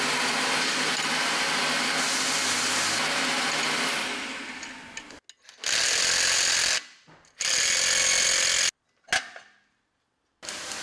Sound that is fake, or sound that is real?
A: real